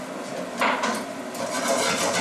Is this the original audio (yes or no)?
yes